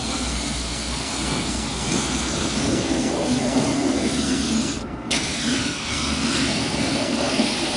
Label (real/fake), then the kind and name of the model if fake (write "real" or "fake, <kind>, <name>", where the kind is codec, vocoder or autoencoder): fake, codec, SNAC